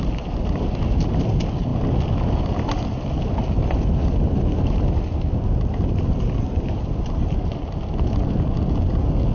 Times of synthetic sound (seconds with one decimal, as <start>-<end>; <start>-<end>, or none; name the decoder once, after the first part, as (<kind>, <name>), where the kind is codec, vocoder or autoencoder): none